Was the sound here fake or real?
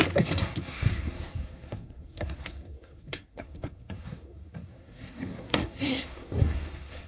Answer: fake